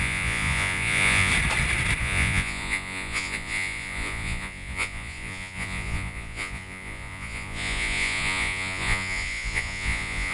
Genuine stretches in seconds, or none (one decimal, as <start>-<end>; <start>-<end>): 1.3-2.0